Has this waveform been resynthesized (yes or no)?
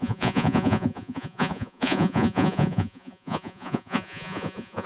yes